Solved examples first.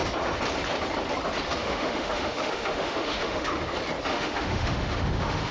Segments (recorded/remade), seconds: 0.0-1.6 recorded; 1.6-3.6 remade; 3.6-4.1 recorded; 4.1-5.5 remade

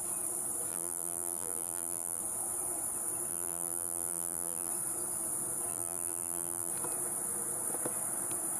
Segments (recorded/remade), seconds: 0.0-0.7 recorded; 0.7-2.2 remade; 2.2-3.3 recorded; 3.3-4.7 remade; 4.7-5.7 recorded; 5.7-6.7 remade; 6.7-8.6 recorded